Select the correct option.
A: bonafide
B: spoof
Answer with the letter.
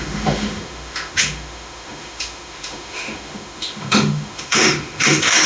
B